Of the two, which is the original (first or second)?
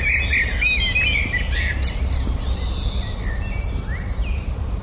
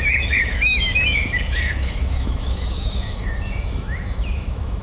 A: first